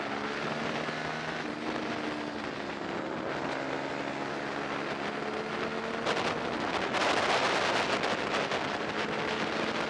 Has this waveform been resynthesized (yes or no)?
no